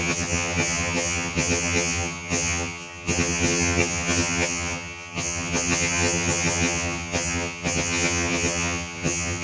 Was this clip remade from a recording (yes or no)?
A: yes